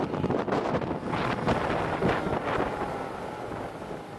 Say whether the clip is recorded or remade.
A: recorded